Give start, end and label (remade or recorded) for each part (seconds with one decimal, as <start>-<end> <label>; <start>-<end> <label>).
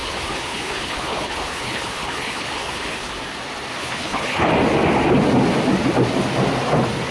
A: 0.0-3.1 remade; 3.1-3.8 recorded; 3.8-4.5 remade; 4.5-7.1 recorded